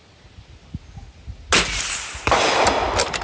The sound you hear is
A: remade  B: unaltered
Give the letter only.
B